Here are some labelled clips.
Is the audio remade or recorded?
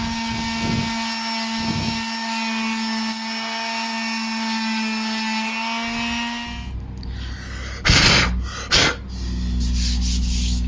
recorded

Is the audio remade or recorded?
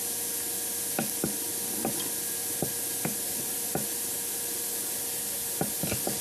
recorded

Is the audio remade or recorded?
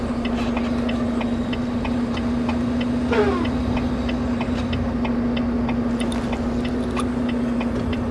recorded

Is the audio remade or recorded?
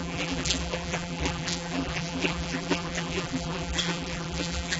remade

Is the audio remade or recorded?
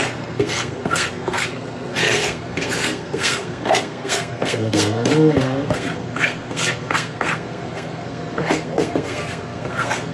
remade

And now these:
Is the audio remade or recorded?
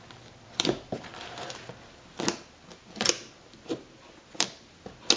recorded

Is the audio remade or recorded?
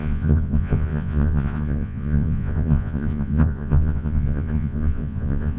remade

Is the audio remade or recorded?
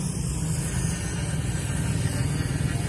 recorded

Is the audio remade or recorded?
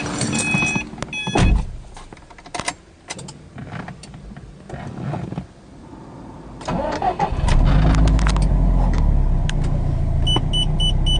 recorded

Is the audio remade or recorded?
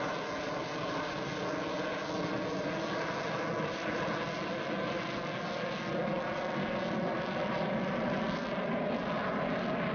recorded